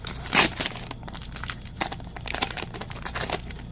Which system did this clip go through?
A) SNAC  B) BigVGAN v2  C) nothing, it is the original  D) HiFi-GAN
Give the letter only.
B